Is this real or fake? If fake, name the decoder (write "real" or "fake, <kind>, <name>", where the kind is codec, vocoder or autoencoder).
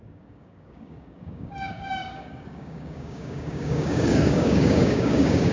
fake, codec, DAC